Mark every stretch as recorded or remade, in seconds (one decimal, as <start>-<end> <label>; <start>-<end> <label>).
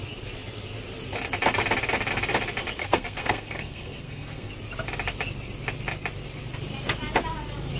0.0-2.8 recorded; 2.8-4.5 remade; 4.5-7.8 recorded